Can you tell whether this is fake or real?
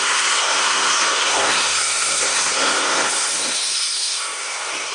fake